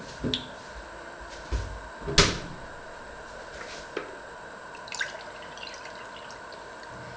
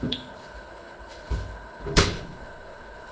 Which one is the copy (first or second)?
second